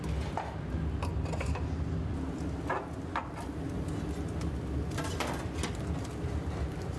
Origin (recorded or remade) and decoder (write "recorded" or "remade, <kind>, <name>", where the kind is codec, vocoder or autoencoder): recorded